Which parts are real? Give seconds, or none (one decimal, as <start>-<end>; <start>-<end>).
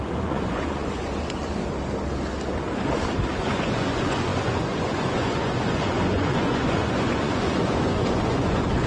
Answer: 1.6-3.4